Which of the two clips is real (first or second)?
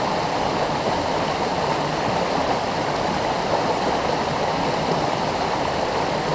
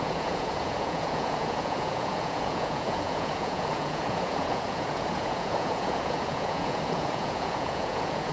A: first